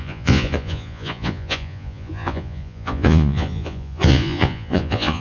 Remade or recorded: remade